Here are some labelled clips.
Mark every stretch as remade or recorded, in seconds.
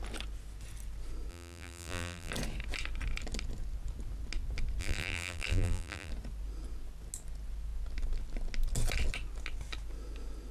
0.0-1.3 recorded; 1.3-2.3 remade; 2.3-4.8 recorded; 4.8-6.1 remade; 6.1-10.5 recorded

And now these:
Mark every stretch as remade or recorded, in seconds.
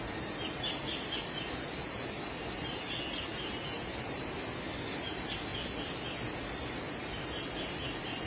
0.0-3.3 recorded; 3.3-4.3 remade; 4.3-8.3 recorded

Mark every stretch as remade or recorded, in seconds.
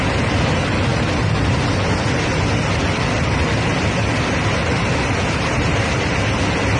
0.0-6.8 recorded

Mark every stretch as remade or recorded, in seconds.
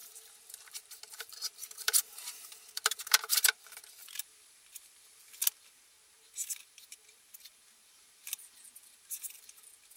0.0-5.2 remade; 5.2-6.1 recorded; 6.1-10.0 remade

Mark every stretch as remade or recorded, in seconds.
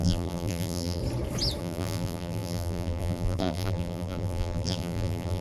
0.0-1.0 remade; 1.0-1.6 recorded; 1.6-5.4 remade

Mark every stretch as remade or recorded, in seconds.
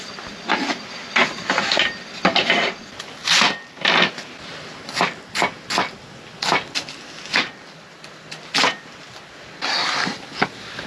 0.0-10.9 recorded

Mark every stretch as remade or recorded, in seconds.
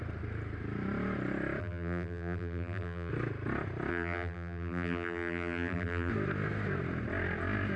0.0-1.6 recorded; 1.6-3.1 remade; 3.1-3.9 recorded; 3.9-6.1 remade; 6.1-7.8 recorded